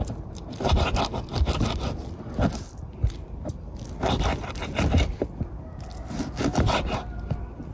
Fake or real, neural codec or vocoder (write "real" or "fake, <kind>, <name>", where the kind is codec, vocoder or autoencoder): real